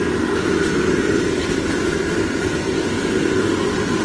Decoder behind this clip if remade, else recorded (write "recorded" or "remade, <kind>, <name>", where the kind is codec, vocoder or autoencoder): recorded